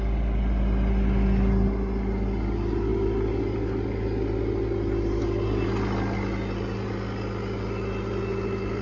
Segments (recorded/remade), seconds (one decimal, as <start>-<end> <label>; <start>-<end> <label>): 0.0-8.8 recorded